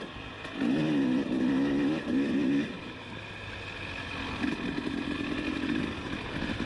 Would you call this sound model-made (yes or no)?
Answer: no